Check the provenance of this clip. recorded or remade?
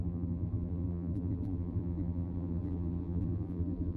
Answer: remade